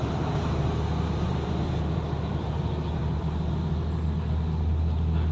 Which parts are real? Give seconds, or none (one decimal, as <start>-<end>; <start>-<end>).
2.6-3.0; 3.7-5.3